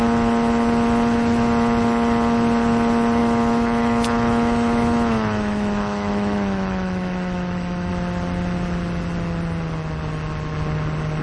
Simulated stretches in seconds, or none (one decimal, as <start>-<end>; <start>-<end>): 3.2-7.9